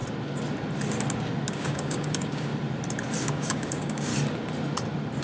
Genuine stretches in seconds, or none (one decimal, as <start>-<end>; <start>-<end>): 0.0-1.5; 2.5-3.2; 4.1-5.2